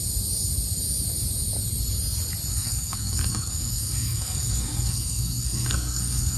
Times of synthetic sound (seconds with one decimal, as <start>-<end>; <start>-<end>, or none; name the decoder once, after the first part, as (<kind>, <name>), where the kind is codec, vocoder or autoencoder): 2.5-6.4 (codec, SNAC)